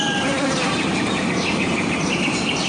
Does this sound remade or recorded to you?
recorded